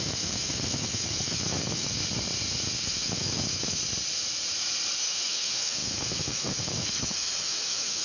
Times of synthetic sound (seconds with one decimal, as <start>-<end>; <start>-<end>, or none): 0.0-2.0; 2.8-3.8; 5.0-8.0